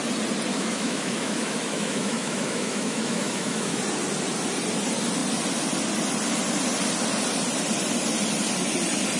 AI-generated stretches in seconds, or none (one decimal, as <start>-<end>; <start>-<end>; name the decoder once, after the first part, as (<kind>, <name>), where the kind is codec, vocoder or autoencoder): 0.5-3.8 (autoencoder, DAC-VAE)